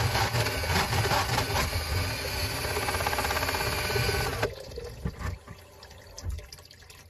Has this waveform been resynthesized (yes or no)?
no